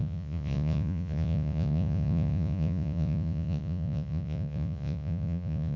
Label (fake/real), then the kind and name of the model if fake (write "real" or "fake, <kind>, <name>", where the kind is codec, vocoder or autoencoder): fake, vocoder, Vocos